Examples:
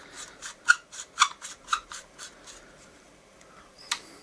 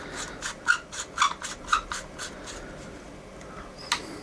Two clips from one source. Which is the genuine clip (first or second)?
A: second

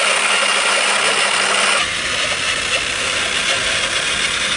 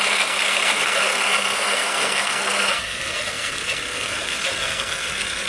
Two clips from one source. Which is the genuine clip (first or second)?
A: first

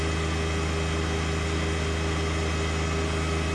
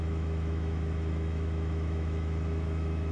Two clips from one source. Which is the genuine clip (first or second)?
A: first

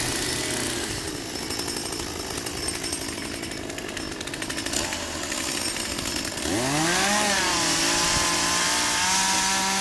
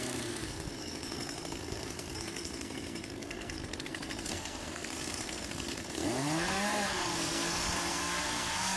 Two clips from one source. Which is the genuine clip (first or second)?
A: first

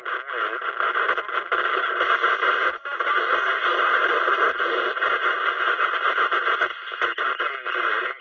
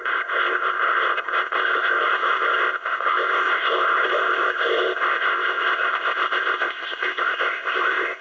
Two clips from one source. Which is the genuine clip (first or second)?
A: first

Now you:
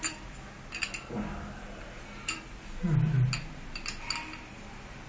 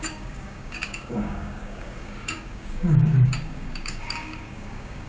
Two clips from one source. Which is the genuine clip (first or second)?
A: first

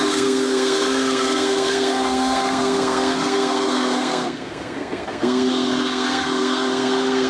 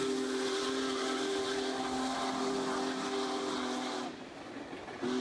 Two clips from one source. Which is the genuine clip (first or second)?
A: second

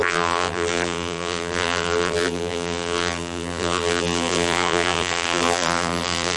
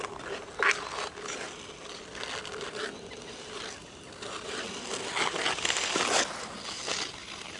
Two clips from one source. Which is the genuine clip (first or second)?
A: second